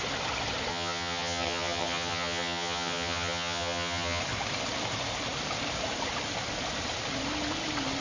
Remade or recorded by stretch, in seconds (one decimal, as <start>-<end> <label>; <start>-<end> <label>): 0.0-0.7 recorded; 0.7-4.2 remade; 4.2-8.0 recorded